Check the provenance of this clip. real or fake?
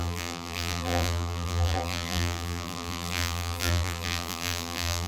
fake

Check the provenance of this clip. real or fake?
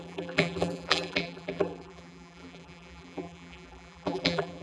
fake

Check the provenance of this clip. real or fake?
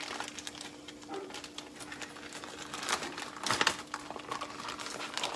real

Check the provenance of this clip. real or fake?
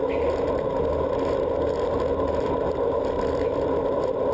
real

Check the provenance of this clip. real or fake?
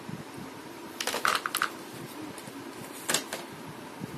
real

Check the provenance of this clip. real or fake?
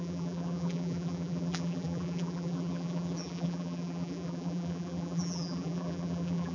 fake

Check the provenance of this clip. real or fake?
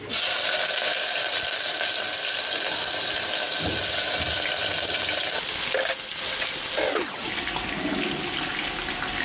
real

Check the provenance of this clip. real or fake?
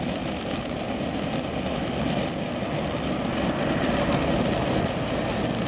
real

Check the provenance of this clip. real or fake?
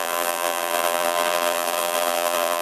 fake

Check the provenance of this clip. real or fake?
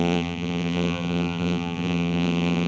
fake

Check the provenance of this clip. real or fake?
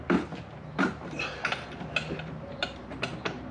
real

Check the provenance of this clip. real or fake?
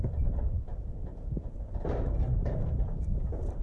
fake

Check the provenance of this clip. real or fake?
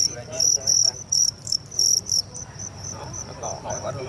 fake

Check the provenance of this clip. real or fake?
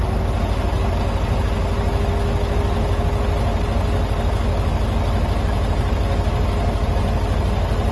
real